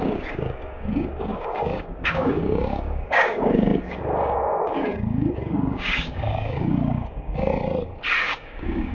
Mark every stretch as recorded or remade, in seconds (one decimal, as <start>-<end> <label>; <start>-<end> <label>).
0.0-7.5 remade; 7.5-8.2 recorded; 8.2-8.9 remade